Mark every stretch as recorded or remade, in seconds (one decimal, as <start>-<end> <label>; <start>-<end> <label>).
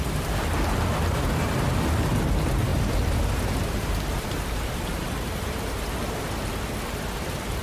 0.0-2.7 recorded; 2.7-6.5 remade; 6.5-7.6 recorded